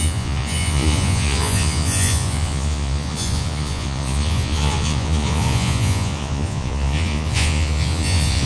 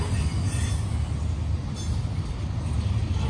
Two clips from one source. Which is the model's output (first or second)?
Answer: first